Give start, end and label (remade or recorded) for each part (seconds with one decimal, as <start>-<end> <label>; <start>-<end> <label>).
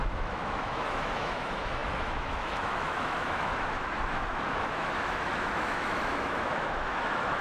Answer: 0.0-7.4 remade